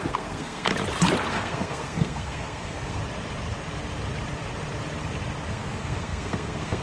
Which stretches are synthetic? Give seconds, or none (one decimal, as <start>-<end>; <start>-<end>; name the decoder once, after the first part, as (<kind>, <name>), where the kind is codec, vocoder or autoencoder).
0.0-0.7 (codec, SNAC); 1.3-3.0; 5.5-6.8